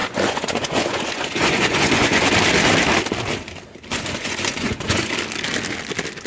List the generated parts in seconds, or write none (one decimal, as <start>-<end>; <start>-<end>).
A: 0.0-2.3; 3.9-5.1